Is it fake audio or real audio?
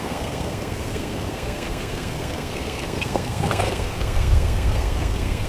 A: fake